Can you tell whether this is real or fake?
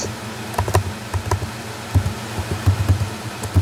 real